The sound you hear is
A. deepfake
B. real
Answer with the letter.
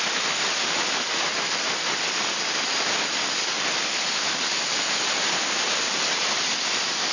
A